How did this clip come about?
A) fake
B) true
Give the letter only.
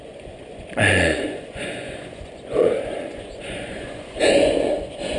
A